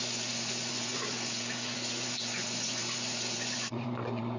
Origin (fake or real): fake